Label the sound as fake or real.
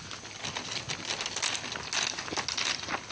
real